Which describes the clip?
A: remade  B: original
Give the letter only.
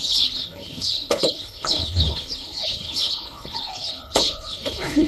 A